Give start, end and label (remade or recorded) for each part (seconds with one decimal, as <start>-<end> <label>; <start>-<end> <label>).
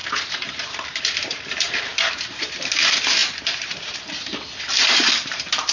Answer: 0.0-5.7 remade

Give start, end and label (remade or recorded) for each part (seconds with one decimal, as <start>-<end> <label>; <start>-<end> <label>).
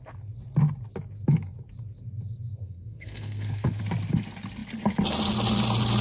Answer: 0.0-2.5 recorded; 2.5-3.8 remade; 3.8-6.0 recorded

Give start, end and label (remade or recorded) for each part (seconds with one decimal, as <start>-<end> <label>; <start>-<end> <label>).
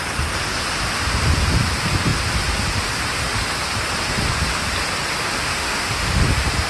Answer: 0.0-5.5 recorded; 5.5-6.2 remade; 6.2-6.7 recorded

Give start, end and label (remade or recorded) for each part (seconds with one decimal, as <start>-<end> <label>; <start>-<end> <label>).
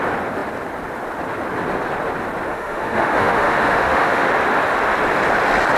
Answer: 0.0-2.5 recorded; 2.5-4.3 remade; 4.3-5.8 recorded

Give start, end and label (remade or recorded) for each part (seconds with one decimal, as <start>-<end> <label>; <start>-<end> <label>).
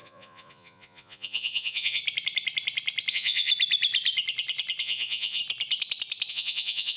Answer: 0.0-2.0 remade; 2.0-3.1 recorded; 3.1-3.5 remade; 3.5-4.8 recorded; 4.8-5.4 remade; 5.4-6.3 recorded; 6.3-7.0 remade